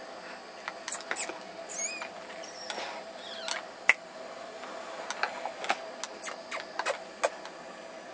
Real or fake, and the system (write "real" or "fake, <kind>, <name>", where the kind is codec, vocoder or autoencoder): real